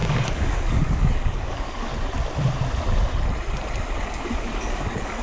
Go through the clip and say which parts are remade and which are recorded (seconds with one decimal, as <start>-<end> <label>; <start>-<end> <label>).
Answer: 0.0-1.9 remade; 1.9-4.0 recorded; 4.0-5.2 remade